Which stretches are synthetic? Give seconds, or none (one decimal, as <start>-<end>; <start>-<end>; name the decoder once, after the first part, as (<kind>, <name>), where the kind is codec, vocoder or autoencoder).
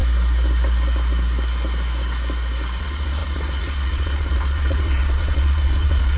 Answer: 2.8-6.2 (vocoder, Vocos)